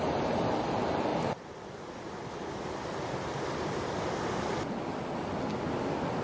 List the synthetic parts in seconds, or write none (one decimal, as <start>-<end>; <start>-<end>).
none

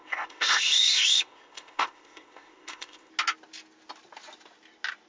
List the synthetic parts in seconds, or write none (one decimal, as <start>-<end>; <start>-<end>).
0.0-3.1